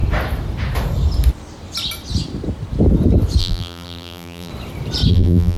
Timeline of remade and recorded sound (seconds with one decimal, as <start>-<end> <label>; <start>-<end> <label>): 0.0-3.4 recorded; 3.4-4.5 remade; 4.5-5.1 recorded; 5.1-5.6 remade

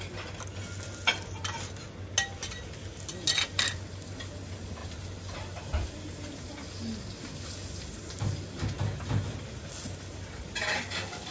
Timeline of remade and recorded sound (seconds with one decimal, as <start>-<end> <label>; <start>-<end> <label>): 0.0-11.3 recorded

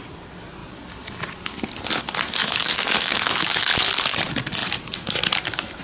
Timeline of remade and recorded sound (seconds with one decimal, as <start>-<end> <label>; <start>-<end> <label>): 0.0-2.4 recorded; 2.4-3.7 remade; 3.7-5.8 recorded

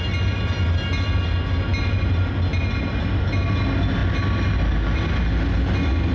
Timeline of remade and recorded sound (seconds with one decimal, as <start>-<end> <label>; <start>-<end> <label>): 0.0-6.1 recorded